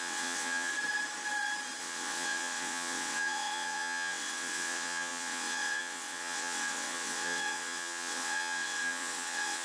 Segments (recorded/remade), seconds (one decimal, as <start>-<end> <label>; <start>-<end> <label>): 0.0-0.7 remade; 0.7-1.8 recorded; 1.8-9.6 remade